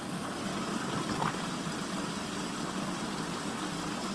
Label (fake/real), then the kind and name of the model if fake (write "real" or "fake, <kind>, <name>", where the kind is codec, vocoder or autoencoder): fake, vocoder, BigVGAN v2